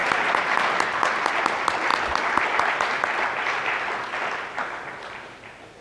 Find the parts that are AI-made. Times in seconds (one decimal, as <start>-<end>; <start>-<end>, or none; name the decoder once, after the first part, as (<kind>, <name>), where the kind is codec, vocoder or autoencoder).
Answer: none